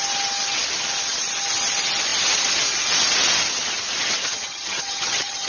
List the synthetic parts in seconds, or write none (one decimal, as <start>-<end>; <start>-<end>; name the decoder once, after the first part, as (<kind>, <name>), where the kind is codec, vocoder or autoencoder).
4.2-5.5 (vocoder, HiFi-GAN)